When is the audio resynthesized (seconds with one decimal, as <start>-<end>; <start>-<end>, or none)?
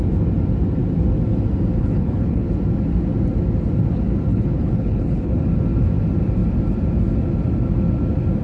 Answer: 1.8-2.5; 4.3-5.4